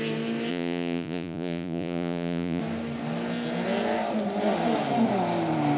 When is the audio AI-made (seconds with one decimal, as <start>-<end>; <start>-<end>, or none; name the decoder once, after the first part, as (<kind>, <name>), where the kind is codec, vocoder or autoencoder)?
0.5-2.6 (vocoder, Vocos)